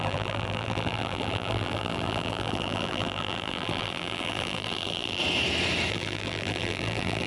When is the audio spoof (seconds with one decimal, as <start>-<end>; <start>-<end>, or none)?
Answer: 0.0-5.2; 5.9-7.3